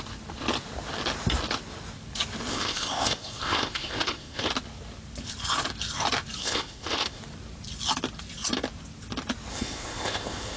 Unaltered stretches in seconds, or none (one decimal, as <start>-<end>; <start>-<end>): 0.0-2.5; 4.5-6.4; 7.2-9.5